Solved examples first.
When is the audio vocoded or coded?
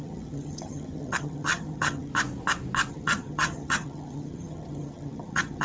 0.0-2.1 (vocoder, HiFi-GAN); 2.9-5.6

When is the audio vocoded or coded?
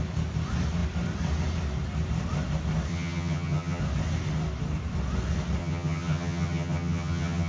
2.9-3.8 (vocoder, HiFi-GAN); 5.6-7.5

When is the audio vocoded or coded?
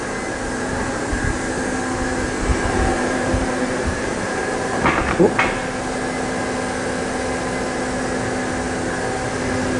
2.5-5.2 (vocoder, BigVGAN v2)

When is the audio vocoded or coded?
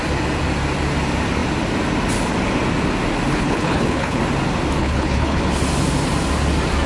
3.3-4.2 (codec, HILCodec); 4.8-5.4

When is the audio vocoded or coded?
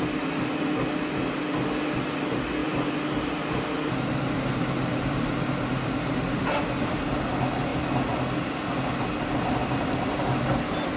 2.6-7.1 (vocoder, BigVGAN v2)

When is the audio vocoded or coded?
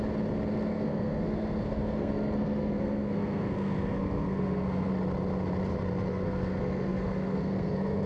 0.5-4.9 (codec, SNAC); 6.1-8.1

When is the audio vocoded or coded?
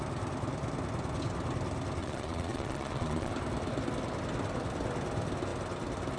2.0-3.3 (vocoder, Vocos)